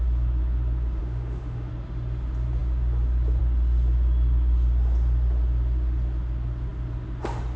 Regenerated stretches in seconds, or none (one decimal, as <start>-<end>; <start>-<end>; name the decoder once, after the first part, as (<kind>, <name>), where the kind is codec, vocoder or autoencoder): 1.0-1.7 (autoencoder, DAC-VAE)